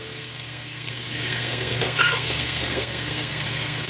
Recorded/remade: remade